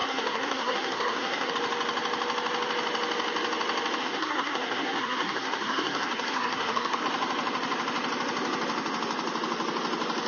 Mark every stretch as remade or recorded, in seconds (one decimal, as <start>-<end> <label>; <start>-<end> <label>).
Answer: 0.0-1.5 remade; 1.5-4.0 recorded; 4.0-7.0 remade; 7.0-10.3 recorded